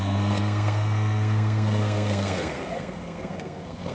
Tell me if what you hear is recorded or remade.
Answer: remade